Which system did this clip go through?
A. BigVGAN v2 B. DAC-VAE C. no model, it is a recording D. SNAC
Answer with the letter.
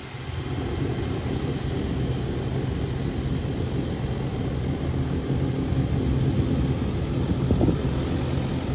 C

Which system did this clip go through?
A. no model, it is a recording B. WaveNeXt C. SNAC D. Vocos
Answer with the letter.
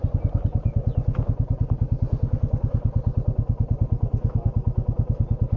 A